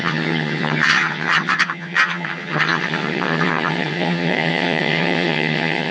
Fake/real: fake